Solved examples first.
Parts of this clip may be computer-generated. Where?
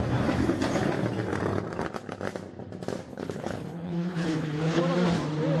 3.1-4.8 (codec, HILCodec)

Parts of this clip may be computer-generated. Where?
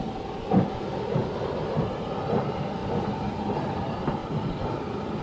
0.0-1.2 (vocoder, BigVGAN v2); 2.2-2.8; 3.8-5.2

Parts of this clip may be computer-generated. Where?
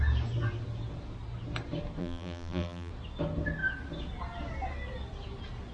2.0-2.9 (vocoder, BigVGAN v2)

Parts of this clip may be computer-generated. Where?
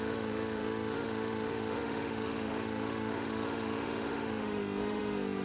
0.0-5.4 (autoencoder, DAC-VAE)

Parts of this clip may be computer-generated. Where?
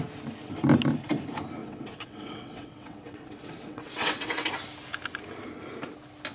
1.6-4.5 (vocoder, WaveNeXt)